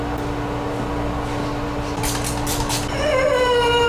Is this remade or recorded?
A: recorded